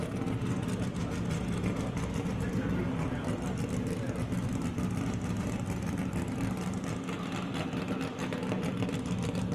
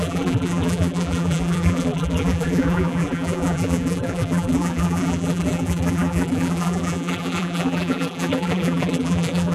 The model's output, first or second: second